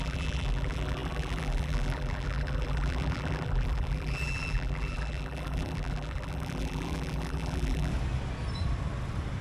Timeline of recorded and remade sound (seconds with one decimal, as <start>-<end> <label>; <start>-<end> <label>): 0.0-7.9 remade; 7.9-9.4 recorded